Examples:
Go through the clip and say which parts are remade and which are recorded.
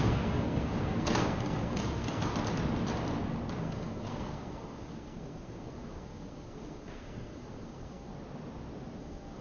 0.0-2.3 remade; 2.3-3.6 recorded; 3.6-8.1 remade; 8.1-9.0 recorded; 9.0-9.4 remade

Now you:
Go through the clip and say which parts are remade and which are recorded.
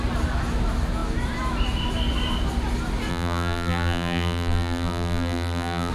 0.0-3.1 recorded; 3.1-5.9 remade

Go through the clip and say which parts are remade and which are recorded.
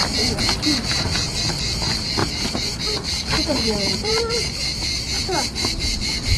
0.0-6.4 remade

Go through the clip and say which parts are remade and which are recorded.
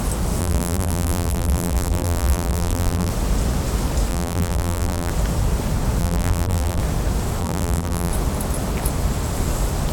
0.0-0.4 recorded; 0.4-3.1 remade; 3.1-4.1 recorded; 4.1-5.1 remade; 5.1-6.0 recorded; 6.0-6.8 remade; 6.8-7.4 recorded; 7.4-8.1 remade; 8.1-9.9 recorded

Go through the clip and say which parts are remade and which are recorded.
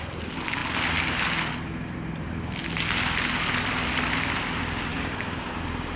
0.0-4.9 recorded; 4.9-5.6 remade; 5.6-6.0 recorded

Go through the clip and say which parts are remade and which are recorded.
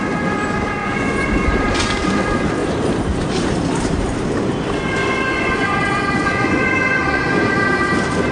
0.0-0.8 recorded; 0.8-1.3 remade; 1.3-5.0 recorded; 5.0-7.4 remade; 7.4-8.3 recorded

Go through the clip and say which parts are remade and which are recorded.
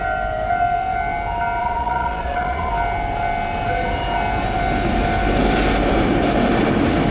0.0-1.6 recorded; 1.6-2.7 remade; 2.7-7.1 recorded